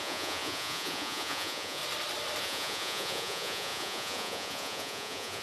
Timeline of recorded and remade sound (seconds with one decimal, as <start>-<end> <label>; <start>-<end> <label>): 0.0-1.8 remade; 1.8-2.4 recorded; 2.4-5.4 remade